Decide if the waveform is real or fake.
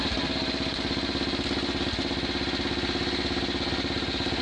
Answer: real